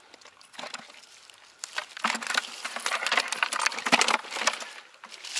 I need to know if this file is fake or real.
real